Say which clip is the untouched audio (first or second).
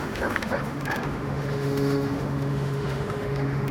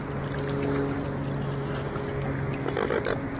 second